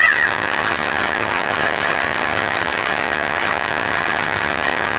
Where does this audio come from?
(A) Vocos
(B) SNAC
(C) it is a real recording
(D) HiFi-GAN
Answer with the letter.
D